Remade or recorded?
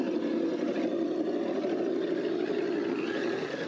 recorded